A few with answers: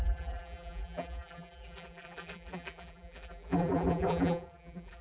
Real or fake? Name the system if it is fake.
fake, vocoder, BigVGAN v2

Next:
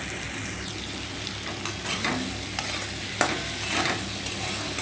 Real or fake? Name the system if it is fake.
real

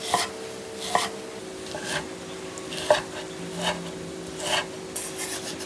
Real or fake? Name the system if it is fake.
real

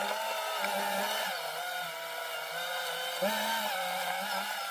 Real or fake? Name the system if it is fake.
real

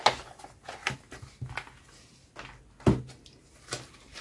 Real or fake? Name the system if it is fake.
real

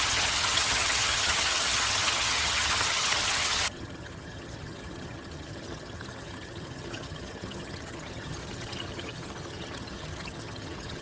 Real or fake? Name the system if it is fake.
fake, vocoder, HiFi-GAN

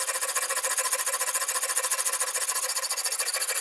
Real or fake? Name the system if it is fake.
real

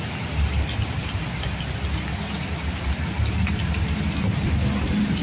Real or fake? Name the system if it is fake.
real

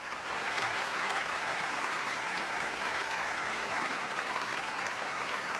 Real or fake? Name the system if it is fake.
fake, codec, SNAC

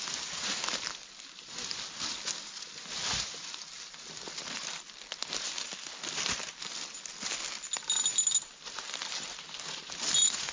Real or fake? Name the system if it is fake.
real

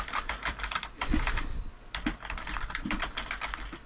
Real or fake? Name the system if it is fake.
fake, vocoder, BigVGAN v2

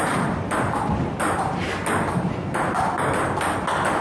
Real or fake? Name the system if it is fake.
real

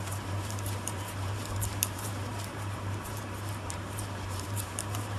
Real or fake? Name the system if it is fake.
fake, vocoder, BigVGAN v2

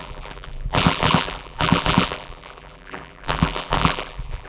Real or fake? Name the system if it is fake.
fake, vocoder, BigVGAN v2